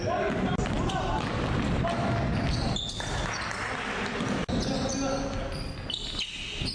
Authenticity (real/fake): real